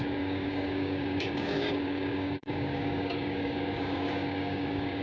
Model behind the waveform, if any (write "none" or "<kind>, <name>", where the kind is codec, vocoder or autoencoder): codec, DAC